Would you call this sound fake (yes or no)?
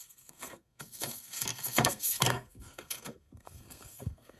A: yes